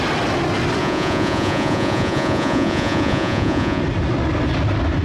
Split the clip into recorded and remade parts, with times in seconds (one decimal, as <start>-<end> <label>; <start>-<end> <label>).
0.0-0.8 recorded; 0.8-3.8 remade; 3.8-5.0 recorded

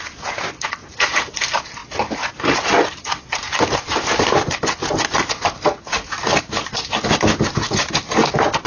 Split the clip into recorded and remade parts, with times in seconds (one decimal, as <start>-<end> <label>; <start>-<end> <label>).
0.0-0.8 recorded; 0.8-1.3 remade; 1.3-8.7 recorded

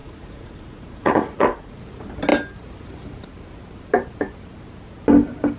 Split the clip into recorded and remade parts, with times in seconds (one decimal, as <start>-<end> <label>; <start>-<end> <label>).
0.0-1.7 remade; 1.7-5.6 recorded

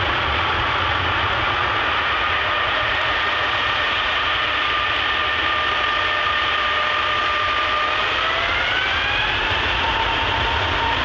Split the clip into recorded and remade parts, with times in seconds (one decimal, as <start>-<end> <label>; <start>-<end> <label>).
0.0-4.6 remade; 4.6-9.2 recorded; 9.2-11.0 remade